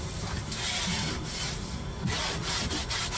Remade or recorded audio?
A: recorded